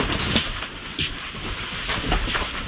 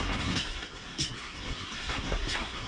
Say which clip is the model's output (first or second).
second